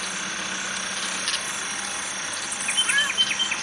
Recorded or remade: recorded